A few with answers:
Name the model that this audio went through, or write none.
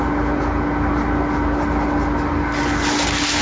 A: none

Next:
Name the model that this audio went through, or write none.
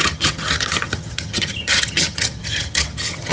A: vocoder, HiFi-GAN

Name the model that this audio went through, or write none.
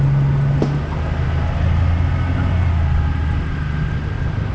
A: none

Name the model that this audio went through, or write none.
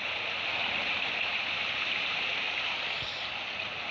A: none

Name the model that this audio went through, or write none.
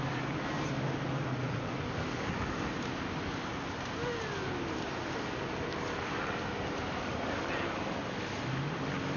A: none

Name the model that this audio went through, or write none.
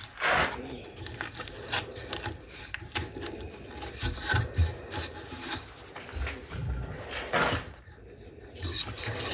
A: none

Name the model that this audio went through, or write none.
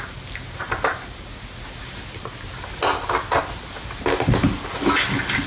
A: none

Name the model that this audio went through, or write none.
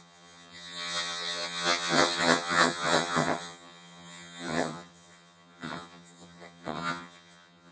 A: vocoder, HiFi-GAN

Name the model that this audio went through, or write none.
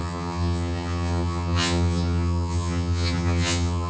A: vocoder, HiFi-GAN